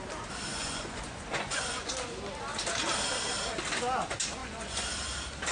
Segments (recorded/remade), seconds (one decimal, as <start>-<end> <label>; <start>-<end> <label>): 0.0-0.5 recorded; 0.5-1.9 remade; 1.9-4.4 recorded; 4.4-4.9 remade; 4.9-5.5 recorded

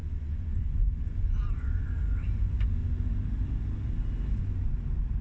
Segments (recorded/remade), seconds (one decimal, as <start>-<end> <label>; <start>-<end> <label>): 0.0-3.1 remade; 3.1-5.2 recorded

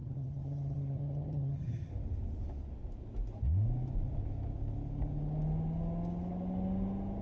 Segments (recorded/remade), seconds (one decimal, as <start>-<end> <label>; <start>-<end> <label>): 0.0-1.9 remade; 1.9-7.2 recorded

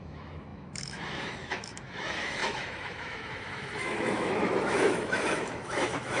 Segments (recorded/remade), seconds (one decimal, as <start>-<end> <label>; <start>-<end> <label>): 0.0-6.2 remade

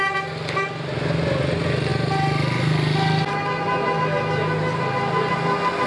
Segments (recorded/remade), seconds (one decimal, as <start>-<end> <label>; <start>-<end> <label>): 0.0-5.9 recorded

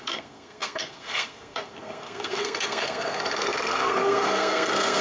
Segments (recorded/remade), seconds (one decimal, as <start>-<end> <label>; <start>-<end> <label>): 0.0-5.0 remade